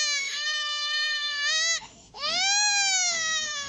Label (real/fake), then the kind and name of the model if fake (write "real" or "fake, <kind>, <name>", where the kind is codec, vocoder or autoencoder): fake, autoencoder, DAC-VAE